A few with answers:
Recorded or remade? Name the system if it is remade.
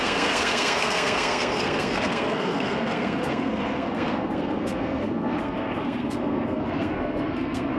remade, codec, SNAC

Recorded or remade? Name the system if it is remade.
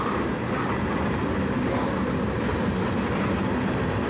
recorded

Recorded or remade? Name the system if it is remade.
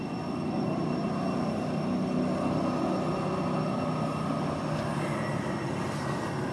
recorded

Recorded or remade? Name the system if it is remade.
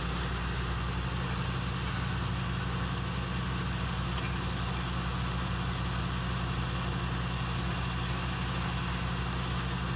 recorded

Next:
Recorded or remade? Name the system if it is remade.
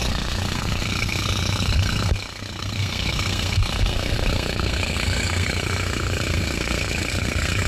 remade, codec, SNAC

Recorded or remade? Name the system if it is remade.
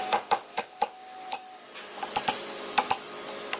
recorded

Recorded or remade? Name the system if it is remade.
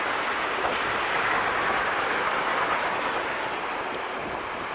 recorded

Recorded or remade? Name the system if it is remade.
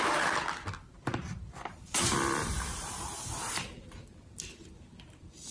recorded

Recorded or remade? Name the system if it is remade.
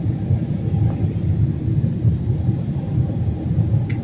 recorded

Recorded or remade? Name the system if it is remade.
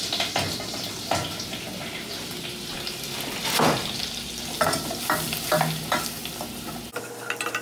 recorded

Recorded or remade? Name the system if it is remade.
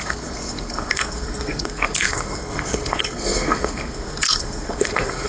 remade, codec, SNAC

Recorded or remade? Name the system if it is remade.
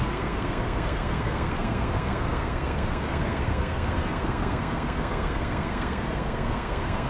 remade, codec, SNAC